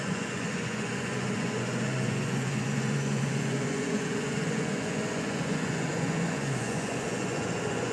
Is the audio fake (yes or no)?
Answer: yes